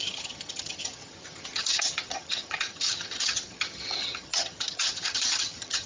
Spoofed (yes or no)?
yes